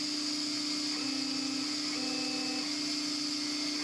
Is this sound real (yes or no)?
yes